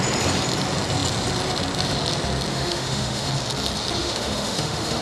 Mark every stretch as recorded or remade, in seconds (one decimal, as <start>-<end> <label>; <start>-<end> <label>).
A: 0.0-2.5 recorded; 2.5-3.3 remade; 3.3-4.0 recorded; 4.0-5.0 remade